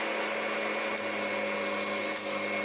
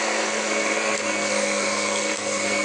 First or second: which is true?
first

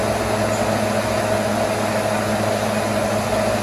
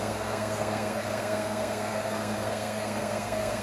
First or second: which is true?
first